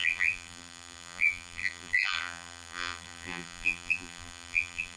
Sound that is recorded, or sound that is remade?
remade